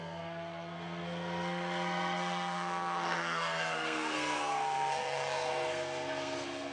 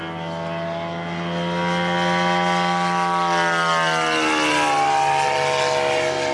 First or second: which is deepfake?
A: first